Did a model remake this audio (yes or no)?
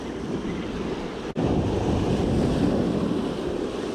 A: no